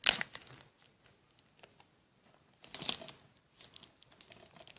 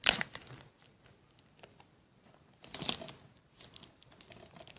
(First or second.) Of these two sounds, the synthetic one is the second